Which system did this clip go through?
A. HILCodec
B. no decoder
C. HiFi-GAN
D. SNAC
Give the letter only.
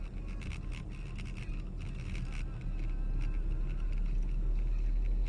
B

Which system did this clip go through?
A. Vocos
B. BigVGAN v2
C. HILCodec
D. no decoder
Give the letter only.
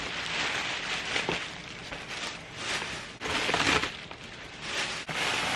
D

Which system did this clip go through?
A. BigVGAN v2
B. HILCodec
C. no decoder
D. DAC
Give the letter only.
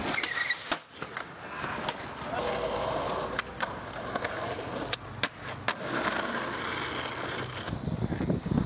C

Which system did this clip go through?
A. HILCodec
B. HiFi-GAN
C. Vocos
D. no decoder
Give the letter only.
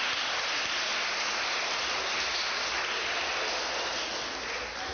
D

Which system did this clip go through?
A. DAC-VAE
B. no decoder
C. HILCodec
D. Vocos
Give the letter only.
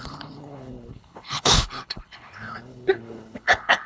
C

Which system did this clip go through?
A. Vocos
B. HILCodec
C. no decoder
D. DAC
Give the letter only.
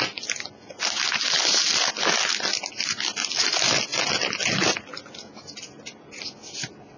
C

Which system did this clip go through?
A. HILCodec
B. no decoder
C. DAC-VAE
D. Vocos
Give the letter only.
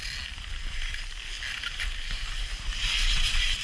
B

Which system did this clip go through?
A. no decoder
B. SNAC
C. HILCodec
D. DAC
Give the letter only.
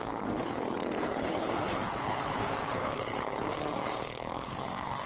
C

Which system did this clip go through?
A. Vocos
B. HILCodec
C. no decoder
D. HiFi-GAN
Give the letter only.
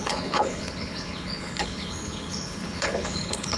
B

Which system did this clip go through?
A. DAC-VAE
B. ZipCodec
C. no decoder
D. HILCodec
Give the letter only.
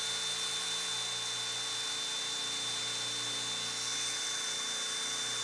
C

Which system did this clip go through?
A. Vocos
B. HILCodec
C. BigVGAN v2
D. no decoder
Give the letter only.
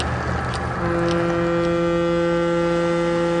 D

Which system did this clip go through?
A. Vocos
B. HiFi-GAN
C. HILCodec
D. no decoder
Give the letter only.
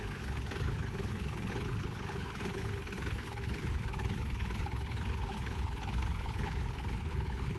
C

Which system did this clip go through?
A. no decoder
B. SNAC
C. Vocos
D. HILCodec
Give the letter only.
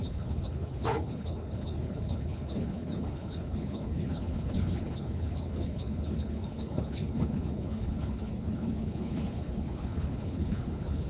D